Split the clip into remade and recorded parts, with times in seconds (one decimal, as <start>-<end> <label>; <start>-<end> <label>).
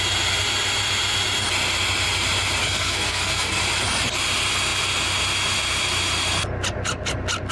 0.0-2.6 recorded; 2.6-3.6 remade; 3.6-7.5 recorded